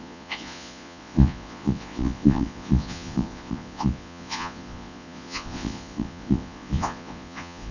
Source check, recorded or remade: remade